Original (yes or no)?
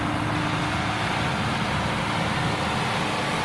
yes